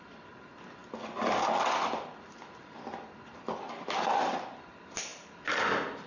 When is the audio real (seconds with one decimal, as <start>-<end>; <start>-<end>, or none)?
0.0-6.1